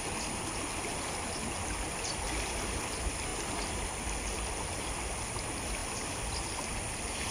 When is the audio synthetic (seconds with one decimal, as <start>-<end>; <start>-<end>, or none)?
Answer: none